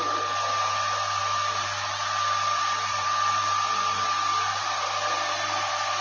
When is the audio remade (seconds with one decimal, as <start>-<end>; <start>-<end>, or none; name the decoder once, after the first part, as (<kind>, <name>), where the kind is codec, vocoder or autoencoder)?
1.2-4.8 (vocoder, BigVGAN v2)